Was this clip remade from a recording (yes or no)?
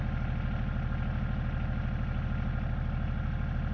no